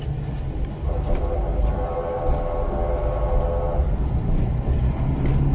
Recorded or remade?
recorded